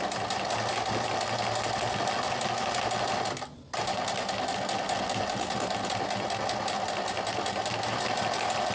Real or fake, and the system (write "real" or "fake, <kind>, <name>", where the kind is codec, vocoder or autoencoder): real